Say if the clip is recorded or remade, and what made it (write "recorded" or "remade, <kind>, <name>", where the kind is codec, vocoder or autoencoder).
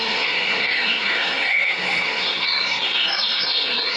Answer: remade, codec, SNAC